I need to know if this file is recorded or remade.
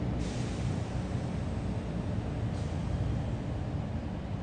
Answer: recorded